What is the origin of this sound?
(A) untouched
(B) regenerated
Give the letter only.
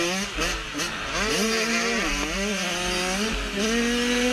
A